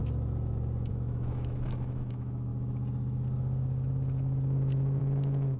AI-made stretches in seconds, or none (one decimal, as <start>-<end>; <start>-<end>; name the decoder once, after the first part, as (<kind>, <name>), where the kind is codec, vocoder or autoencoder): 0.9-2.5 (autoencoder, DAC-VAE); 5.0-5.6